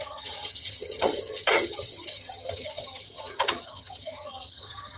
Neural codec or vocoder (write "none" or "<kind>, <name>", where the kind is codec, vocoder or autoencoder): vocoder, HiFi-GAN